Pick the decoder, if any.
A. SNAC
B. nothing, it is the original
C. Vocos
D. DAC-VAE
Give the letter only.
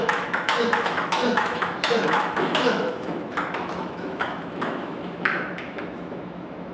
D